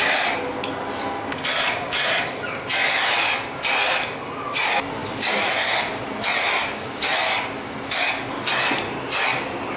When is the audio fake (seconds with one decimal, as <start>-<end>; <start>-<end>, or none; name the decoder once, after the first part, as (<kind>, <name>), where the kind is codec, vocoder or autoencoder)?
5.0-5.5 (vocoder, BigVGAN v2)